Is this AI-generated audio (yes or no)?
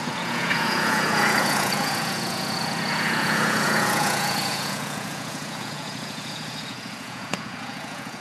yes